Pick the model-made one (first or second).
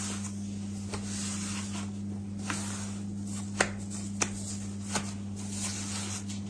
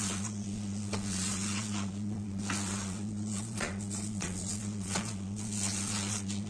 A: second